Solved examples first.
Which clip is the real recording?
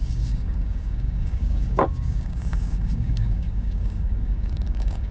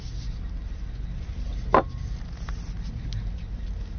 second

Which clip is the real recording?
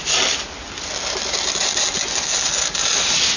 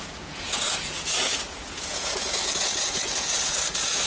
first